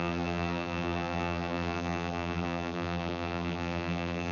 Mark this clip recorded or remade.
remade